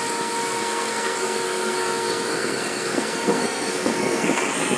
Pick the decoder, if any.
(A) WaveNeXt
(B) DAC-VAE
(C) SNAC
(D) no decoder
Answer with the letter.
C